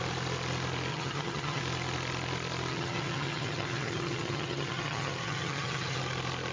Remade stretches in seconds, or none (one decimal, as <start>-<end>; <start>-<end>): 0.9-1.6; 2.7-6.0